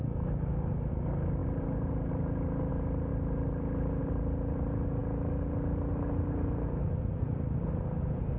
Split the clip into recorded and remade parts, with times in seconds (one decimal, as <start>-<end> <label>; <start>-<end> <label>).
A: 0.0-8.4 recorded